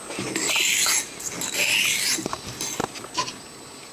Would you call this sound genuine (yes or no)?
yes